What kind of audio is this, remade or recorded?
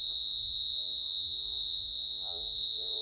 remade